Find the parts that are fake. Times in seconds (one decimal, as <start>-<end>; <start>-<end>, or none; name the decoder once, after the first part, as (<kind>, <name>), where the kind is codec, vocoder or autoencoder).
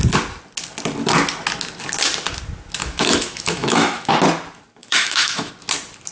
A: 2.8-4.1 (autoencoder, DAC-VAE); 4.8-5.5